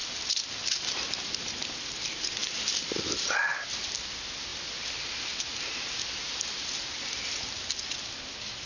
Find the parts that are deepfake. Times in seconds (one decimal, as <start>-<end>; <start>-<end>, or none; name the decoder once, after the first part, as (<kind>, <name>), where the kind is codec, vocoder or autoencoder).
none

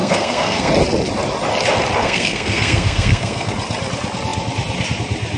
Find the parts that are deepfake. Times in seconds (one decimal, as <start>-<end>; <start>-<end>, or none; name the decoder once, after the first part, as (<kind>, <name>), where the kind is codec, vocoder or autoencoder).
0.0-0.7 (codec, SNAC); 2.0-3.5

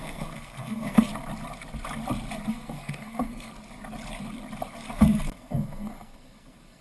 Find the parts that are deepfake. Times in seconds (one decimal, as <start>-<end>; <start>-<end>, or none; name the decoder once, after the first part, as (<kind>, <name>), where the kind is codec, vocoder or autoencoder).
0.0-1.1 (codec, SNAC); 2.5-3.5; 4.9-6.8

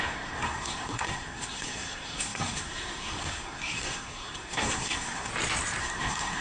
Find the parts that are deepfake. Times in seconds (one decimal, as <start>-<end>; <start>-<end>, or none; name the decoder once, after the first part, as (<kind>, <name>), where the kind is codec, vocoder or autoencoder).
0.0-5.3 (codec, SNAC); 5.8-6.4

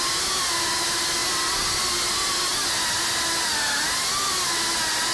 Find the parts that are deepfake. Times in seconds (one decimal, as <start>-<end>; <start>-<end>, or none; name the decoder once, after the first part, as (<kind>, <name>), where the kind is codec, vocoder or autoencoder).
none

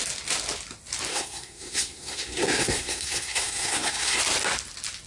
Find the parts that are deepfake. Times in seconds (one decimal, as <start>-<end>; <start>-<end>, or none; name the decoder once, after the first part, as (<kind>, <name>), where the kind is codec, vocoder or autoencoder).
1.1-4.2 (codec, SNAC)